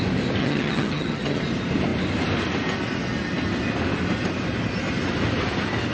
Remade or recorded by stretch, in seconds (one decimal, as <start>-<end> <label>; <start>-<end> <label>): 0.0-0.4 recorded; 0.4-1.4 remade; 1.4-5.9 recorded